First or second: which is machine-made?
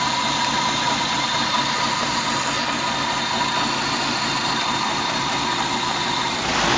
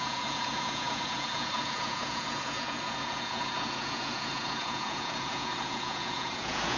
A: second